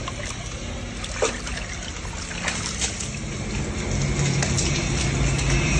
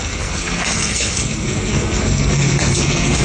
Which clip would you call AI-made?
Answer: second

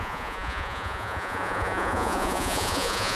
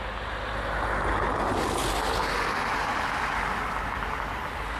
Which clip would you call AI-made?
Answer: first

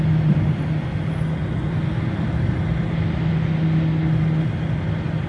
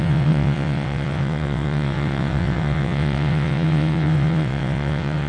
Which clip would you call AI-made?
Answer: second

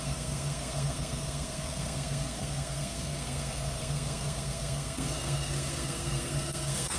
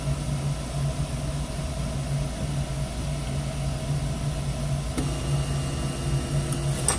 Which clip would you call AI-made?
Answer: first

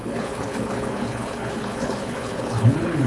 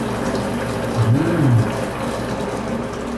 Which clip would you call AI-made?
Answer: first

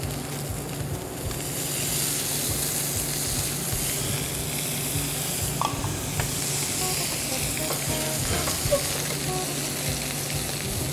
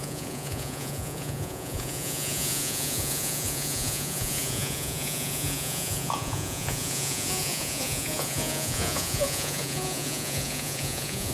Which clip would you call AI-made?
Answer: second